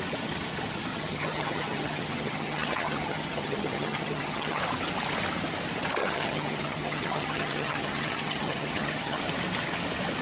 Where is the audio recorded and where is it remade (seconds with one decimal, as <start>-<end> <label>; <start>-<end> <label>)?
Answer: 0.0-0.9 recorded; 0.9-4.6 remade; 4.6-6.0 recorded; 6.0-9.2 remade; 9.2-10.2 recorded